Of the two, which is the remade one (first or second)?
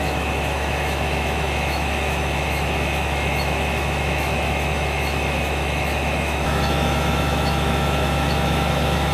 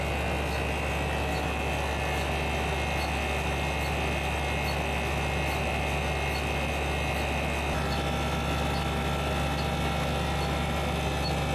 first